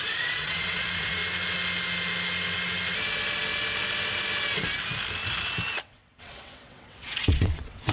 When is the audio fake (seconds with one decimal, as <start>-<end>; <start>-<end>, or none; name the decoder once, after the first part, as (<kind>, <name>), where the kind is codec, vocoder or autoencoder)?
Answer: 0.0-1.2 (vocoder, WaveNeXt); 5.8-7.9